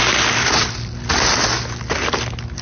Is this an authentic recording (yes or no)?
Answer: yes